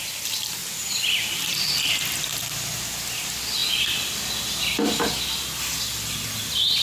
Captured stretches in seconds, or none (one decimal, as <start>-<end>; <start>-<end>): 0.0-0.6; 1.5-6.8